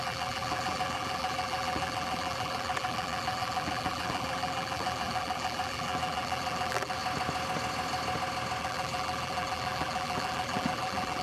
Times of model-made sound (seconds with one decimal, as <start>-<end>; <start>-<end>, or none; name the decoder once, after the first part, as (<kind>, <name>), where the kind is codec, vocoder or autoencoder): 0.0-7.0 (vocoder, BigVGAN v2); 8.6-11.2